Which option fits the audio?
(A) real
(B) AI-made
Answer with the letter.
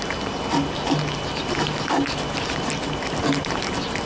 A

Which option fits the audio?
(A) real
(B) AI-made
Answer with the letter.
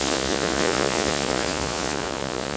B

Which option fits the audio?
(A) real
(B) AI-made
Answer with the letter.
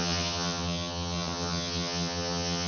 B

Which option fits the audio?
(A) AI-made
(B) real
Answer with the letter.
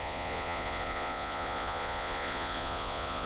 A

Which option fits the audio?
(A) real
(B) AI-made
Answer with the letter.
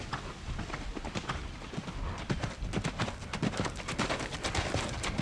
A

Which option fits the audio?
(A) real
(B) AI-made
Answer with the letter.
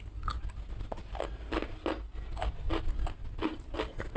A